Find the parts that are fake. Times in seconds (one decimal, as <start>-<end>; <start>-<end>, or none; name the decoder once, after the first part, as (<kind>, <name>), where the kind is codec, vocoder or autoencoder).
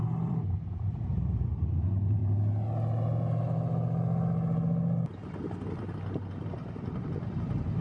0.0-2.2 (vocoder, BigVGAN v2); 6.3-7.8